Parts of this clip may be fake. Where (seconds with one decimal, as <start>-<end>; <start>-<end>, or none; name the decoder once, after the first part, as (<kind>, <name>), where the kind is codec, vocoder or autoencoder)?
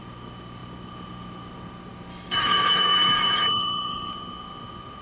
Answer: 2.1-4.1 (autoencoder, DAC-VAE)